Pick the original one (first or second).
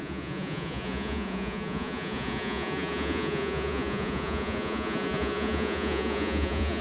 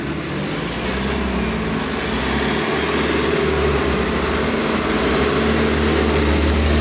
second